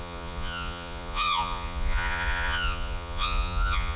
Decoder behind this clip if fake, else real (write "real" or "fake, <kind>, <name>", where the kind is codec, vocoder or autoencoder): fake, vocoder, Vocos